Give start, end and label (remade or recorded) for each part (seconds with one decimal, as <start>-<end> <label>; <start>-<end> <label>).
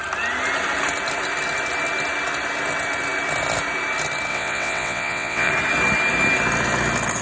0.0-4.3 recorded; 4.3-5.5 remade; 5.5-7.2 recorded